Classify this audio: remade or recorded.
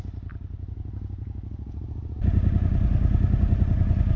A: recorded